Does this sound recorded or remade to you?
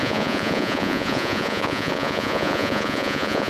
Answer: remade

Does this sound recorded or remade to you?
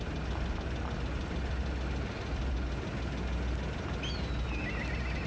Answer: recorded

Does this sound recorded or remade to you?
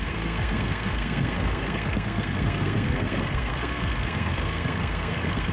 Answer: remade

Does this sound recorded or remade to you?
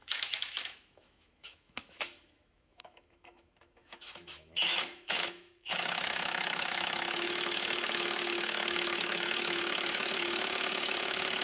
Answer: remade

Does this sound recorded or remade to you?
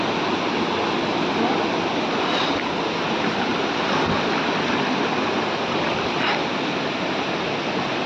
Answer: recorded